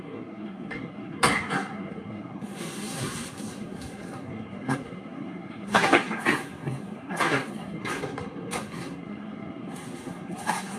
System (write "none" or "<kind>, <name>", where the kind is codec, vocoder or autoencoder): codec, SNAC